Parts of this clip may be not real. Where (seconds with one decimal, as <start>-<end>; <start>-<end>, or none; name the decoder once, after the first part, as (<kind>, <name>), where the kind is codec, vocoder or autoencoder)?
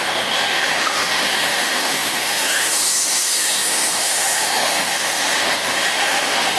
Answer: 0.0-6.6 (autoencoder, DAC-VAE)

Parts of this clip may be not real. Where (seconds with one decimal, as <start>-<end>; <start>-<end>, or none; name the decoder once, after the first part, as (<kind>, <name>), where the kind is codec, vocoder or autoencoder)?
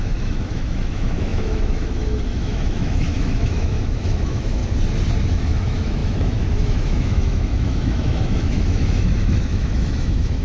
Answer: 0.0-4.6 (autoencoder, DAC-VAE); 5.2-10.4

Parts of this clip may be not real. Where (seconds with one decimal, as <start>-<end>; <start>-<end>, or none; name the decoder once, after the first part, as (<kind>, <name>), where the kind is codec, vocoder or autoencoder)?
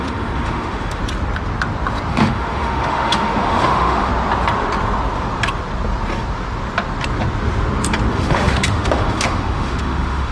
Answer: 0.0-1.0 (autoencoder, DAC-VAE); 2.1-4.1; 8.1-10.3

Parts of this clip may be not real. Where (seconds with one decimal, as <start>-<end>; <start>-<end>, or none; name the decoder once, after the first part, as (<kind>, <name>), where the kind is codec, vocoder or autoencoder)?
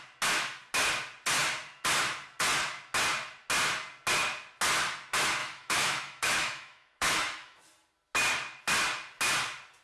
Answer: 5.4-7.6 (autoencoder, DAC-VAE)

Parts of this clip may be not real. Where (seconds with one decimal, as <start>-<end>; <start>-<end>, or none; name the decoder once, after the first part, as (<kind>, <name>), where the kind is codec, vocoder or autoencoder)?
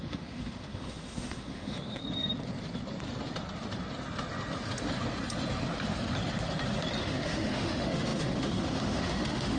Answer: 0.0-2.0 (autoencoder, DAC-VAE); 7.0-9.6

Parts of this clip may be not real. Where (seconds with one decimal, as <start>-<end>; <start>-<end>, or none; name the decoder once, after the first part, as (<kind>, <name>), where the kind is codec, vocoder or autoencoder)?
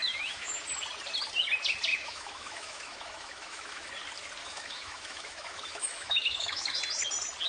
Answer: 0.0-0.6 (autoencoder, DAC-VAE); 1.9-3.9; 4.4-6.8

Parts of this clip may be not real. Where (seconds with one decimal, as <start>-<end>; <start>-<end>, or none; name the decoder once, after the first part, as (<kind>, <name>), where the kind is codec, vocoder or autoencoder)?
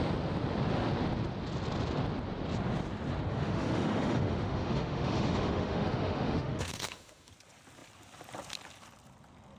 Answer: 3.3-7.3 (autoencoder, DAC-VAE)